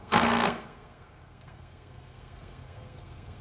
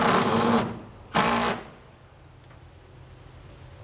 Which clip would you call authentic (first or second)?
second